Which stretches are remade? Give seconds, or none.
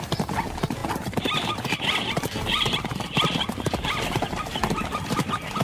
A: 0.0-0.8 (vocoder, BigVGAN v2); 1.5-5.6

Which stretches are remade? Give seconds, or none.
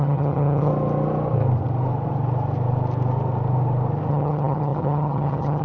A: 0.0-0.7 (vocoder, HiFi-GAN); 4.1-5.6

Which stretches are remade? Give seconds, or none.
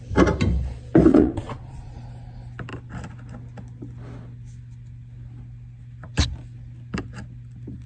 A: 1.1-2.0 (vocoder, Vocos)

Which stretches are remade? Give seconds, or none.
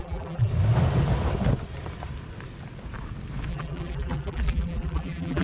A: 0.0-0.5 (vocoder, BigVGAN v2); 3.5-5.4